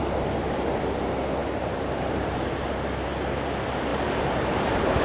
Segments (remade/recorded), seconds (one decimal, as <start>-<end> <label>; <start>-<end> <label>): 0.0-1.4 recorded; 1.4-2.4 remade; 2.4-3.9 recorded; 3.9-5.0 remade